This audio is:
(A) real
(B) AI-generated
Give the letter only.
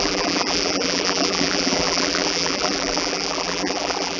B